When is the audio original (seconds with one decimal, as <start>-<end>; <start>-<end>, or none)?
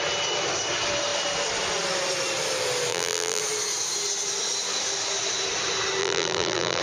0.0-2.9; 3.4-6.0